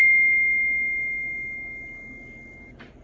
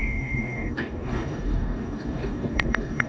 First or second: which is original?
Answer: first